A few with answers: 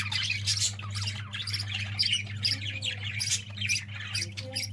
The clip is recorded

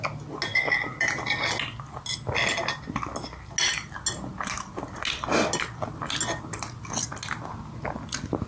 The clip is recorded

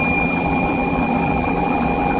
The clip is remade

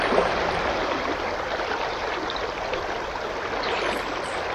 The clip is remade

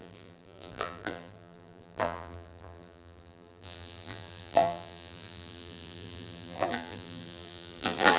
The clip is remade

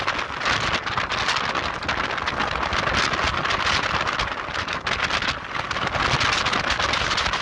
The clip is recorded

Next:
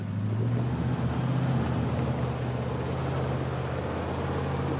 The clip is recorded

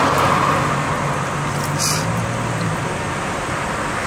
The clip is recorded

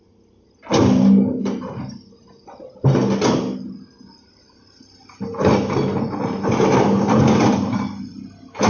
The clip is recorded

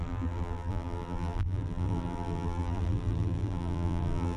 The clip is remade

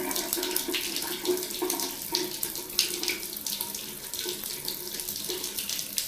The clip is recorded